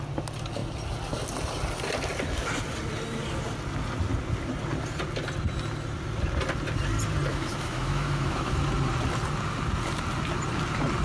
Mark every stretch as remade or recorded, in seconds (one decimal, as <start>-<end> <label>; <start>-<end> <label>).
0.0-7.3 recorded; 7.3-8.6 remade; 8.6-11.0 recorded

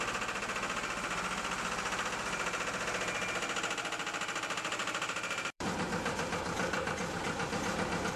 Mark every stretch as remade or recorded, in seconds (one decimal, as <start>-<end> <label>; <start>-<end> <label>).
0.0-4.8 recorded; 4.8-8.2 remade

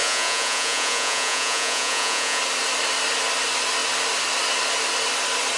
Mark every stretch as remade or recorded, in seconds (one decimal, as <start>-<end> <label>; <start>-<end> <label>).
0.0-2.4 remade; 2.4-5.6 recorded

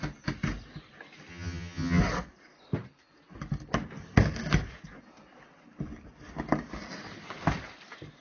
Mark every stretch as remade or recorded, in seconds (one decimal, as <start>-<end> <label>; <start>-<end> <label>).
0.0-1.3 recorded; 1.3-2.0 remade; 2.0-8.2 recorded

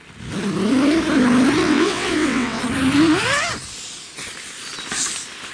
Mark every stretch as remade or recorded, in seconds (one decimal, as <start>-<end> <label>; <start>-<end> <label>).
0.0-1.6 recorded; 1.6-2.6 remade; 2.6-5.5 recorded

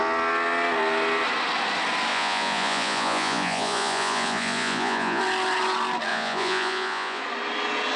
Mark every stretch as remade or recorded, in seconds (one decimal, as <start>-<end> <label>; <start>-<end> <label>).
0.0-2.1 recorded; 2.1-5.2 remade; 5.2-6.1 recorded; 6.1-7.2 remade; 7.2-8.0 recorded

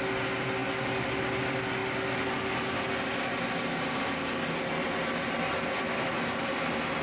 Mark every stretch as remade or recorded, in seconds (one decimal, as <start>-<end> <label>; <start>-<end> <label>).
0.0-7.0 recorded